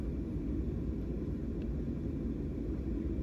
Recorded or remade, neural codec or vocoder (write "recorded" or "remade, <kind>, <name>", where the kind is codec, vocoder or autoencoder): recorded